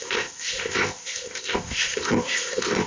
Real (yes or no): no